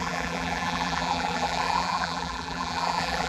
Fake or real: fake